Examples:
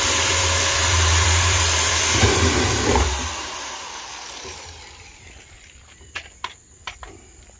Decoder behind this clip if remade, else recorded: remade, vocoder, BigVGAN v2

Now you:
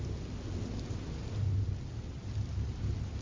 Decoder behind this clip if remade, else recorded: recorded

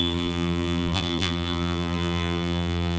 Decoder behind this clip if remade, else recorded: remade, vocoder, BigVGAN v2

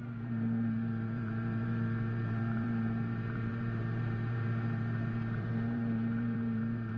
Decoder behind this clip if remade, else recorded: remade, vocoder, BigVGAN v2